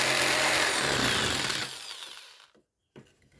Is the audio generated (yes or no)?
no